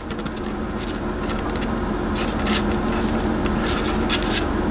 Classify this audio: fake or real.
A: real